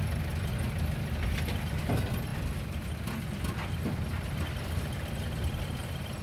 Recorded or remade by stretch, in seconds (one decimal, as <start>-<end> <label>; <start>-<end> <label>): 0.0-6.2 recorded